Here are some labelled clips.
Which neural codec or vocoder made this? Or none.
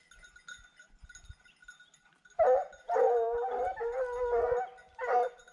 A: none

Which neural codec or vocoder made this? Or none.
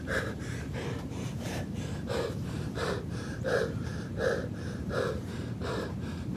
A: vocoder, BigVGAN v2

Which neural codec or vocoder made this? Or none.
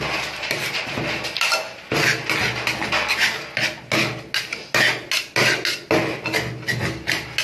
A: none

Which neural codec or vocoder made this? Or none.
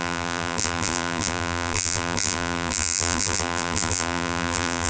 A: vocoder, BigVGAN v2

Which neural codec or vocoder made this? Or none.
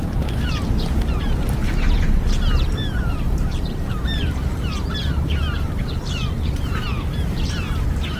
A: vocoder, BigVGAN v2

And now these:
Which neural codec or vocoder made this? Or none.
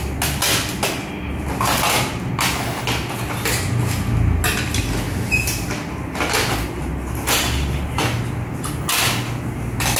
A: none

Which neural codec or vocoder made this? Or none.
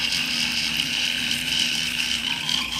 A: vocoder, BigVGAN v2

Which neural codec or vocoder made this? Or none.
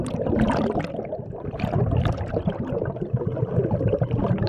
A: vocoder, BigVGAN v2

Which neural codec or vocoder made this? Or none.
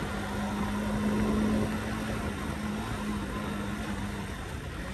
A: none